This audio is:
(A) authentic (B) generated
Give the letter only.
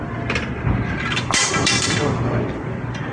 A